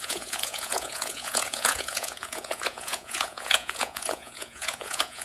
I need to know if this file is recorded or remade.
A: remade